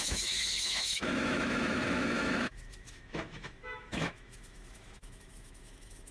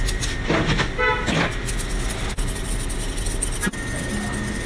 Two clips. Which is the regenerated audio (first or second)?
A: first